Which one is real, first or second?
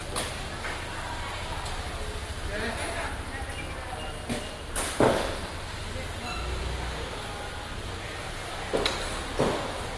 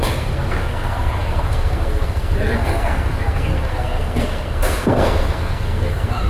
first